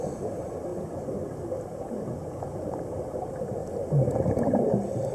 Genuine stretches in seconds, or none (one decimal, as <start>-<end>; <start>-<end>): 3.6-4.2